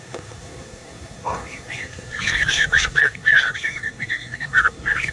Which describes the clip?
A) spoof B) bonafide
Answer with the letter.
A